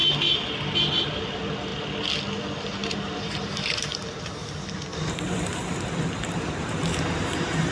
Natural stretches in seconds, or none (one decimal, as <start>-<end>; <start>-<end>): 0.0-2.8; 3.7-4.9